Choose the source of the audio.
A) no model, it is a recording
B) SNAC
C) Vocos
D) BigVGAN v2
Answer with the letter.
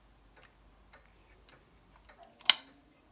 A